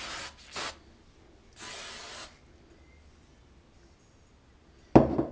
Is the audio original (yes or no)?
yes